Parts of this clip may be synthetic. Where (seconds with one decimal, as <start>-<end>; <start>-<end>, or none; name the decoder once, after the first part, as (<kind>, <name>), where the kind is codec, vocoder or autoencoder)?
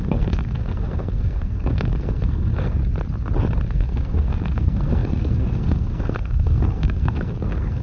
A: 0.0-2.8 (codec, SNAC); 3.7-7.8